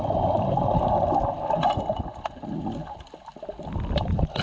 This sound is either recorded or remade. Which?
recorded